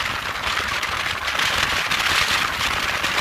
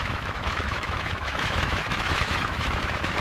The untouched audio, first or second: first